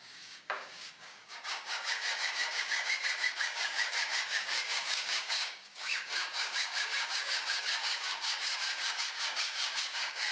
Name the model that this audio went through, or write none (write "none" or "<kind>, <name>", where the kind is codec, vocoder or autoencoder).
codec, DAC